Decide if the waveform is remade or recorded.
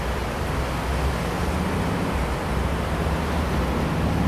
recorded